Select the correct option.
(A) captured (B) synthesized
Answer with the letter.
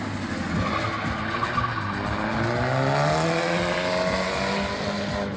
A